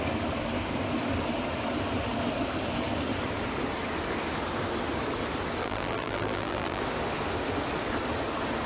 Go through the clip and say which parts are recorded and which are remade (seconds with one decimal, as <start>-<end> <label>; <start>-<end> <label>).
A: 0.0-5.6 recorded; 5.6-6.8 remade; 6.8-8.7 recorded